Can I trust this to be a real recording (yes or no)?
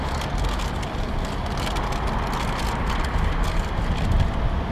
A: yes